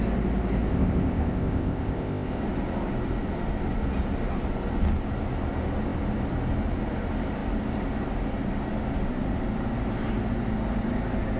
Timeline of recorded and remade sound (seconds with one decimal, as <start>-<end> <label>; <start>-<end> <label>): 0.0-0.7 recorded; 0.7-2.4 remade; 2.4-11.4 recorded